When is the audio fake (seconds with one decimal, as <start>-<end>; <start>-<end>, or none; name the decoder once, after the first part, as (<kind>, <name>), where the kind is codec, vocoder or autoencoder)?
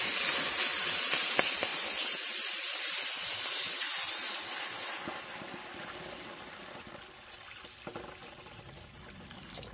1.7-3.1 (vocoder, BigVGAN v2)